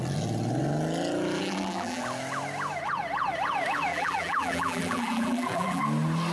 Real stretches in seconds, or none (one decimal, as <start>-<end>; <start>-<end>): 0.0-1.4; 2.0-3.9; 5.8-6.3